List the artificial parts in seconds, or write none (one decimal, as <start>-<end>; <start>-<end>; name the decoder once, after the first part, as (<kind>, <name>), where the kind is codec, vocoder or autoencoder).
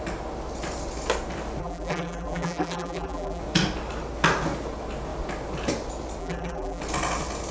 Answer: 1.6-3.4 (vocoder, BigVGAN v2); 6.2-6.8